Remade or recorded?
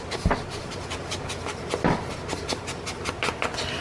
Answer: recorded